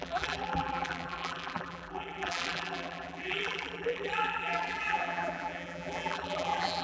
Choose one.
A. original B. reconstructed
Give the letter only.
B